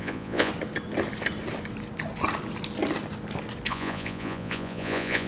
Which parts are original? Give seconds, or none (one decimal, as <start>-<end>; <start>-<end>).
0.5-3.7